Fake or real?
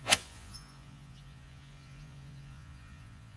fake